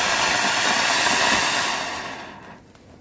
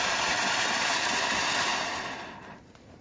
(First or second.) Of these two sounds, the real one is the first